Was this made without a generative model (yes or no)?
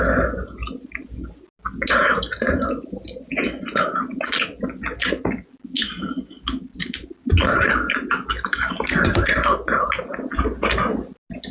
yes